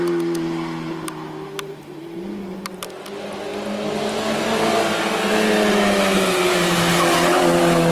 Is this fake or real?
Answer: real